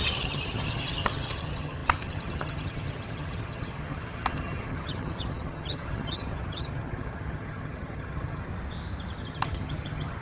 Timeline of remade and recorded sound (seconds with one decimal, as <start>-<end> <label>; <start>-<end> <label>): 0.0-8.5 remade; 8.5-9.2 recorded; 9.2-10.2 remade